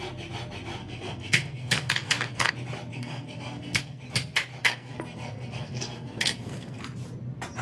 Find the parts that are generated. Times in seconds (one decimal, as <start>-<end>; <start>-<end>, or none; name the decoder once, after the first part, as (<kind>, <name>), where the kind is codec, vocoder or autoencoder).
0.8-2.5 (codec, SNAC); 2.9-4.0; 4.6-6.8

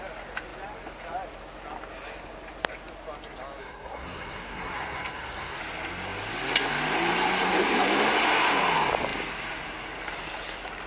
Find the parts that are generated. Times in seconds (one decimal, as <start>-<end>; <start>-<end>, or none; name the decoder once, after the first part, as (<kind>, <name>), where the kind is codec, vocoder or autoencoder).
3.6-5.6 (codec, SNAC)

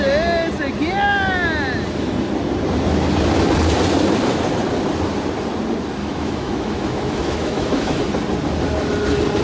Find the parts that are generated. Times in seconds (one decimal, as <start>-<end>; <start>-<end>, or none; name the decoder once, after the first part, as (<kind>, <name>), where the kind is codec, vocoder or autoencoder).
6.0-8.0 (autoencoder, DAC-VAE)

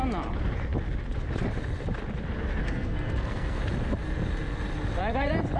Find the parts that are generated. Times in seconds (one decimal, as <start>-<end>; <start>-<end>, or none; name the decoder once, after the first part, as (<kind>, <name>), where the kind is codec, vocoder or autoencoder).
2.6-3.6 (codec, SNAC)

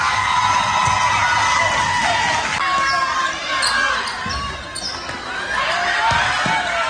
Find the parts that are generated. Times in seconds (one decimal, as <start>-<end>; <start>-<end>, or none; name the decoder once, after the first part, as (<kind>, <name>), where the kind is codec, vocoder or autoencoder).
none

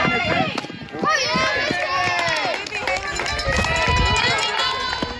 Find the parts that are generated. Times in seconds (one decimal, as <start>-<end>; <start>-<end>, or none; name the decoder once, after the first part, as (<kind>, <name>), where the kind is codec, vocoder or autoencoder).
none

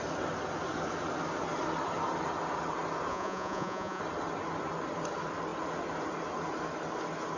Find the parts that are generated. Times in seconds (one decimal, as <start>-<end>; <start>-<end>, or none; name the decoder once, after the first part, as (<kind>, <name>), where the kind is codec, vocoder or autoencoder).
3.1-4.0 (vocoder, Vocos)